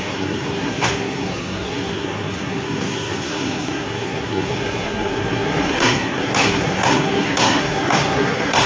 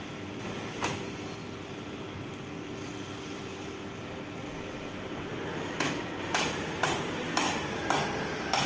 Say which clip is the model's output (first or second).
first